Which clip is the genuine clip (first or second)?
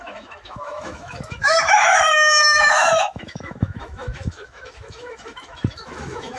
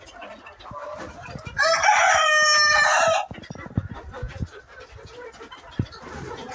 second